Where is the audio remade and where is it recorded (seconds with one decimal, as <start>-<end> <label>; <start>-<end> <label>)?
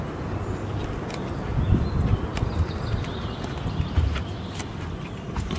0.0-5.6 recorded